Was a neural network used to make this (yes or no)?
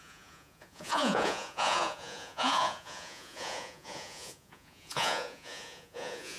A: yes